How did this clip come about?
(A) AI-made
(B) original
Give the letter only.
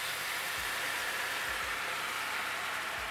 B